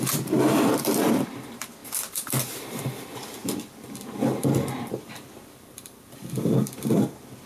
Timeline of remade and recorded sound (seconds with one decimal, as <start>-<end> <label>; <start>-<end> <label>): 0.0-7.5 remade